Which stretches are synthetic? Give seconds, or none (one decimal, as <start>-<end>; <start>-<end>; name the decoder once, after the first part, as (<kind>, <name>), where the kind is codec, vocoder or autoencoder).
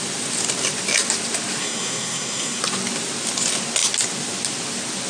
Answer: 1.6-2.6 (codec, SNAC)